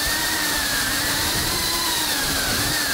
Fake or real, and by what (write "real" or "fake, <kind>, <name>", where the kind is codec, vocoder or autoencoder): fake, vocoder, BigVGAN v2